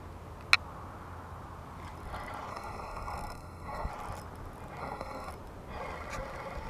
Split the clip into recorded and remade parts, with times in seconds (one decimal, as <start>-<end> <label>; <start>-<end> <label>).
0.0-2.5 recorded; 2.5-3.9 remade; 3.9-4.8 recorded; 4.8-5.3 remade; 5.3-6.7 recorded